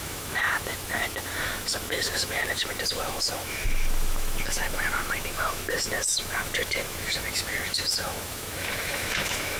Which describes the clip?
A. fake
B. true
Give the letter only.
A